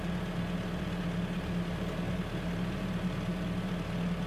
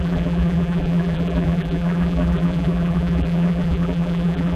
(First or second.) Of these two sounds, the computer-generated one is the second